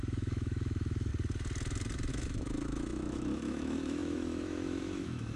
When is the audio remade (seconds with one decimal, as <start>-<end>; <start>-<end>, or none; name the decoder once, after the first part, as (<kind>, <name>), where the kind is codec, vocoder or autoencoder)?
0.0-1.1 (autoencoder, DAC-VAE); 2.1-5.4